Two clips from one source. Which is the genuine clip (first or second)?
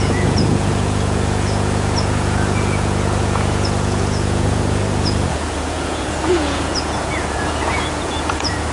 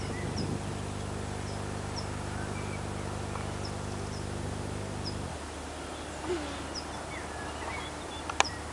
second